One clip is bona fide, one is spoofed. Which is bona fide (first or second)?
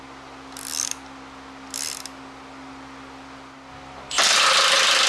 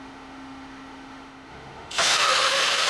first